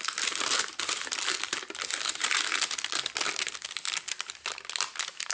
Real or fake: real